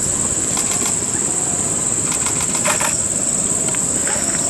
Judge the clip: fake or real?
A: real